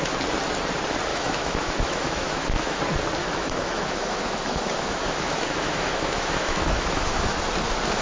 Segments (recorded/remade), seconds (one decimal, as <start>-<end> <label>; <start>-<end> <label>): 0.0-1.1 recorded; 1.1-2.8 remade; 2.8-3.2 recorded; 3.2-7.4 remade; 7.4-8.0 recorded